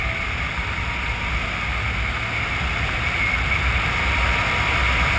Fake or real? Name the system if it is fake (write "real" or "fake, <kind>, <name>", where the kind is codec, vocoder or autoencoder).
real